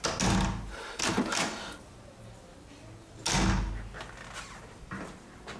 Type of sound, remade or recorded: recorded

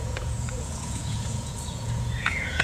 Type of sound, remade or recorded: remade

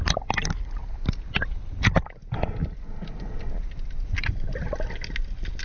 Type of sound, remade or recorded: recorded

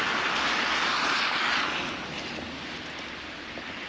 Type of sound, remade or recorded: recorded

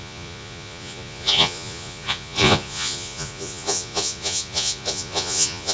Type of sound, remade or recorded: remade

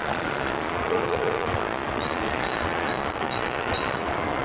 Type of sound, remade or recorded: remade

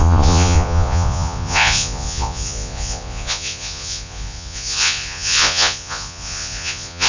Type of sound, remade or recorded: remade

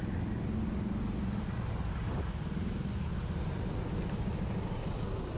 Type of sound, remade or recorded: recorded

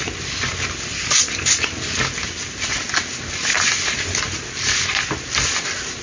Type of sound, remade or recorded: recorded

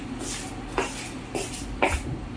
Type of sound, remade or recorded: recorded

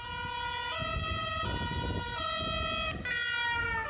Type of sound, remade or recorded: recorded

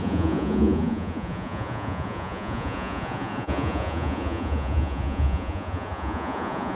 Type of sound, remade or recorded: remade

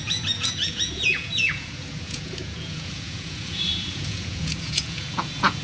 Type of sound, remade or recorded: remade